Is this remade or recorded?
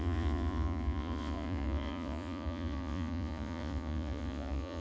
remade